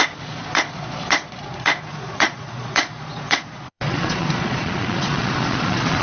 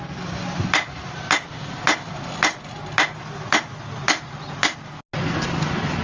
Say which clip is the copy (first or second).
first